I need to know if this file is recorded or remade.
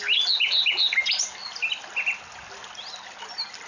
recorded